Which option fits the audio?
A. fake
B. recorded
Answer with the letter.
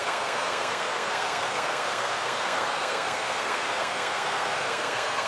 A